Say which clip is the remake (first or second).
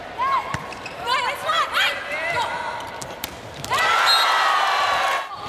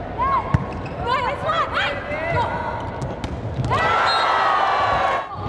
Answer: first